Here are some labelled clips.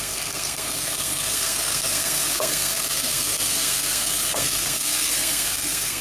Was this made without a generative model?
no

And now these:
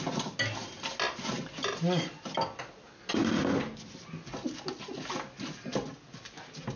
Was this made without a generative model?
yes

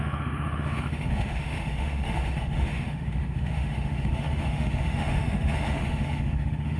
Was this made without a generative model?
no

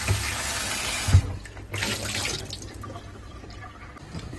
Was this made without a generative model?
yes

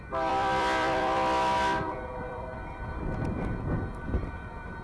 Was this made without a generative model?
no